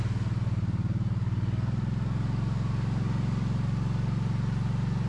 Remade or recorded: recorded